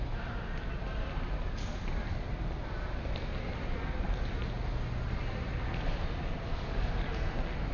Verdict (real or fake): real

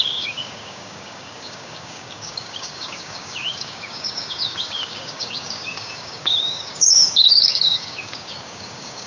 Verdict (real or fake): fake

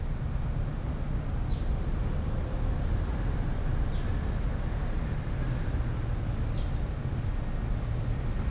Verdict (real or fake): real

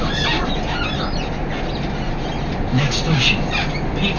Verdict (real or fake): real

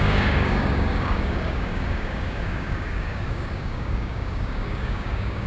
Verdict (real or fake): fake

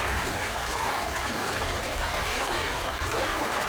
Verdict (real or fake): fake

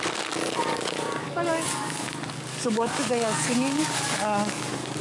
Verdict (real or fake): fake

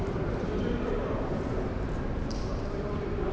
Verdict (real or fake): real